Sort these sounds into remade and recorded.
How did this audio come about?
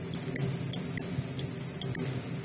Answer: recorded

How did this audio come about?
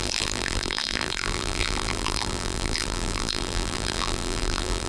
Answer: remade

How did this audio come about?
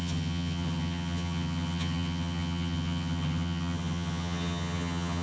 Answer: remade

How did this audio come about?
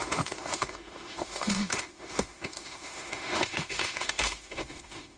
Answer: remade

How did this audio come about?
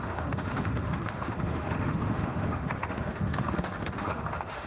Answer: remade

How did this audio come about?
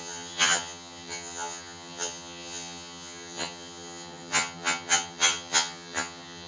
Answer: remade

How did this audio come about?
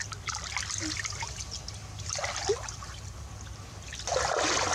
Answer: recorded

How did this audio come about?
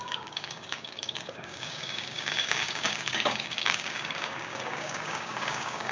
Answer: remade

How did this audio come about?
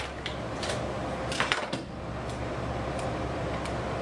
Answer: remade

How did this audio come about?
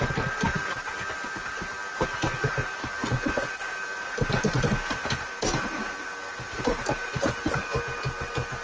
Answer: recorded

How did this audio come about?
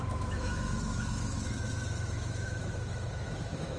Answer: remade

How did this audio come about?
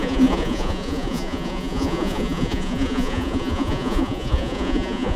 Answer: remade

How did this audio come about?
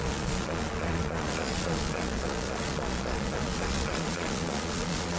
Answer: remade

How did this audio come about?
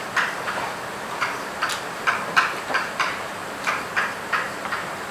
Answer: remade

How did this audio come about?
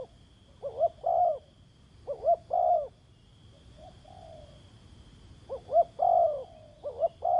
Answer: recorded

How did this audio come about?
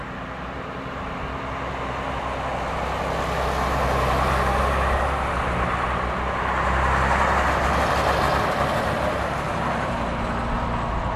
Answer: recorded